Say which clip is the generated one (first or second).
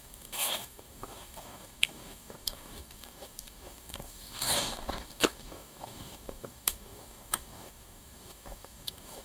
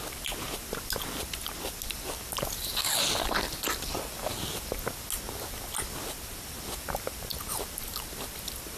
first